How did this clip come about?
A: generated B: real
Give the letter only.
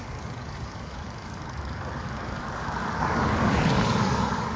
A